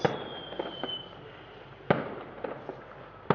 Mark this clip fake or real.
real